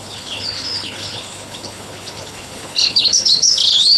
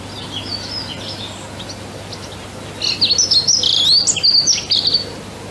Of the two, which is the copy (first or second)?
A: first